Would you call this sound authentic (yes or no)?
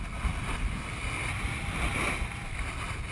yes